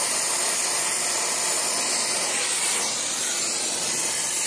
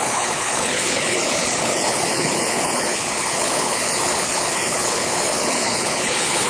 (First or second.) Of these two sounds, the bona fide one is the first